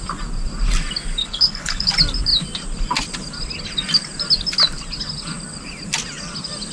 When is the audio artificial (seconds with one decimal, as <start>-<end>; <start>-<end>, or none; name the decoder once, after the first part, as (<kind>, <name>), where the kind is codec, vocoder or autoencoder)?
1.2-1.9 (codec, HILCodec)